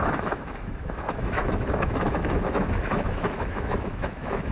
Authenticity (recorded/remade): remade